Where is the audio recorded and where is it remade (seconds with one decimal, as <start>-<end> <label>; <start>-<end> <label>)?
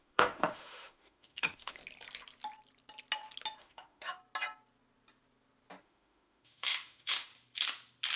0.0-1.8 remade; 1.8-3.6 recorded; 3.6-4.2 remade; 4.2-5.8 recorded; 5.8-7.3 remade; 7.3-8.2 recorded